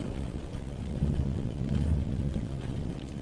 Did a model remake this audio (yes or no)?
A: yes